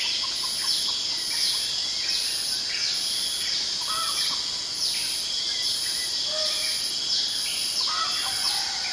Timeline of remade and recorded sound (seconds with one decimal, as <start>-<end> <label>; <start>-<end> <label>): 0.0-8.9 recorded